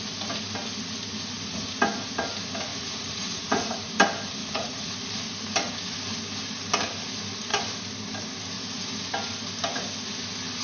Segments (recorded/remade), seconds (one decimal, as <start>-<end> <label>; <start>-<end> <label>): 0.0-2.7 recorded; 2.7-3.9 remade; 3.9-4.4 recorded; 4.4-4.9 remade; 4.9-10.6 recorded